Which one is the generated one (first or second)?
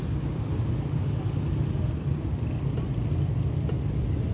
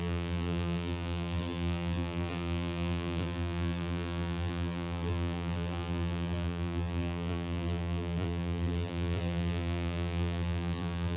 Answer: second